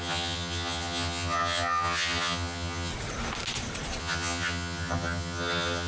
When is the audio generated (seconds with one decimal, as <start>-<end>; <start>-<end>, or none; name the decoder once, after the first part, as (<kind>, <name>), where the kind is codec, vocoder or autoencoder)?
0.0-2.9 (vocoder, HiFi-GAN); 4.0-5.9